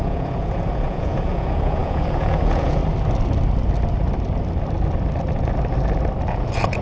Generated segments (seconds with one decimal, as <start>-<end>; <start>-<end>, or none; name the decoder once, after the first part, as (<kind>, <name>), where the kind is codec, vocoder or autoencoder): 0.0-2.8 (vocoder, Vocos); 6.3-6.8